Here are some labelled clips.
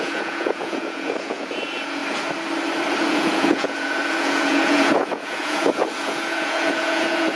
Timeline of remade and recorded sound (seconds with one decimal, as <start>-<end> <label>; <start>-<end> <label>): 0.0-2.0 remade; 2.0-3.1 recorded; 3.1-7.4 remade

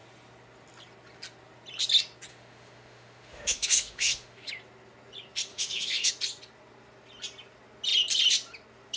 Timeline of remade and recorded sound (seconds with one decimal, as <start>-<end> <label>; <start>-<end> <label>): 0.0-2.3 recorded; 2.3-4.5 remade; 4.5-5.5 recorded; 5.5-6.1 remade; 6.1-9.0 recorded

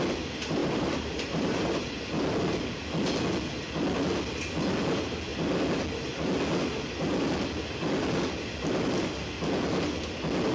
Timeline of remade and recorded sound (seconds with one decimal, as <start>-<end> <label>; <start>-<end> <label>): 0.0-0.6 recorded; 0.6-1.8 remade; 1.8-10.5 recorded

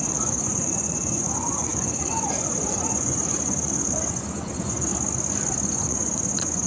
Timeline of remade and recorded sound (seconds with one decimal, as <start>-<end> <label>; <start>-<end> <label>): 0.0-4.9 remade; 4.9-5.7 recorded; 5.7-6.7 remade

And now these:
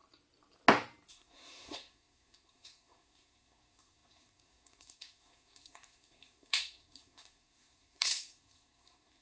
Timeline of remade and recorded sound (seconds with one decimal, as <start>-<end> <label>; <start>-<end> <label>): 0.0-1.1 recorded; 1.1-9.2 remade